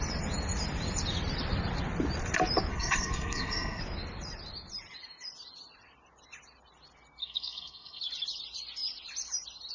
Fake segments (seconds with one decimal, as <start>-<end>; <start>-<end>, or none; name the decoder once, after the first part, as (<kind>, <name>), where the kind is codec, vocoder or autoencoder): 2.7-3.8 (codec, SNAC); 7.2-8.0